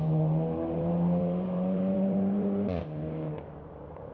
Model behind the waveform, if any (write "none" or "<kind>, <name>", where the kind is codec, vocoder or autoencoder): vocoder, BigVGAN v2